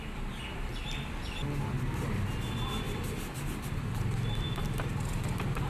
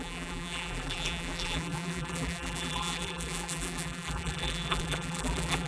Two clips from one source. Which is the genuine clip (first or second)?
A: first